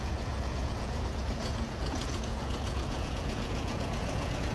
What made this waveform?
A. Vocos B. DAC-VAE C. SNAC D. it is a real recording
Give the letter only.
A